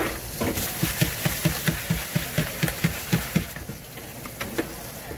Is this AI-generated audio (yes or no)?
no